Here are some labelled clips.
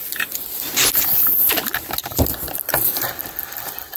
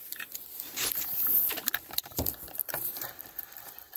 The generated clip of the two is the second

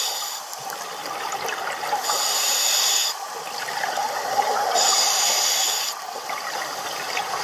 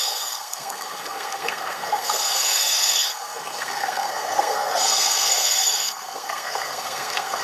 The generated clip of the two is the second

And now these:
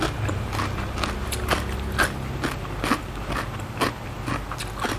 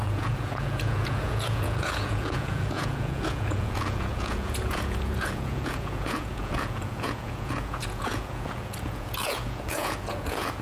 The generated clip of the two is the second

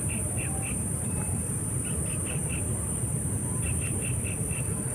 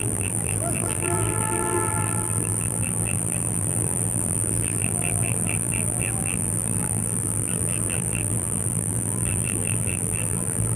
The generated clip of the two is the second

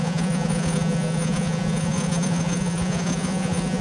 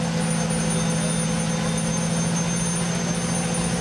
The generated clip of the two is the first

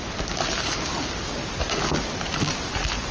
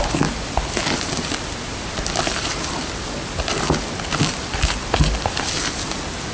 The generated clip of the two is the second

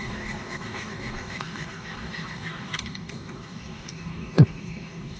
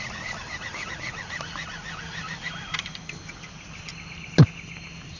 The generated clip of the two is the first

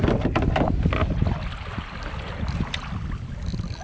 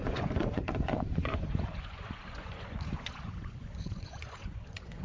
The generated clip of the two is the second